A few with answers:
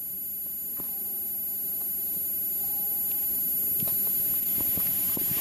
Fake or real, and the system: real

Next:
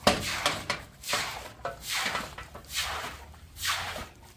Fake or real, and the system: fake, vocoder, BigVGAN v2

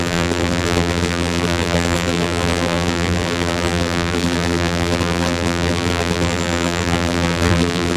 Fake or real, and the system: fake, vocoder, BigVGAN v2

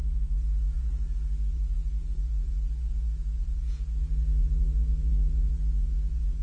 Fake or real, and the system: fake, vocoder, Vocos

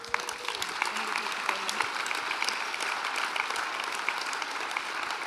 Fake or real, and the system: real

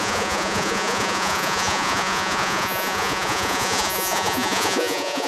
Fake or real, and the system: fake, vocoder, Vocos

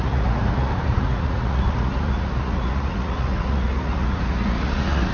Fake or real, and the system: fake, vocoder, Vocos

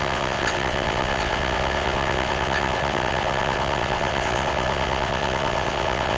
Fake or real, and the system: fake, vocoder, WaveNeXt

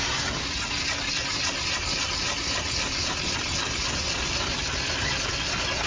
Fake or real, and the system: real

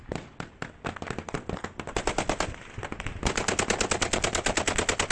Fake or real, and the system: real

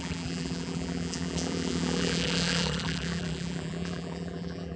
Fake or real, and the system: fake, vocoder, BigVGAN v2